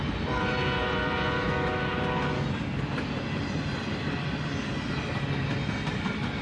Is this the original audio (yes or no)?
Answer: yes